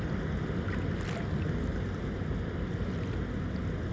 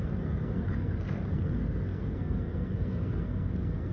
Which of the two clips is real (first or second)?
first